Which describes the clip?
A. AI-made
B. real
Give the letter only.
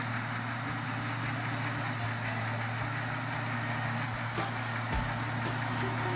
B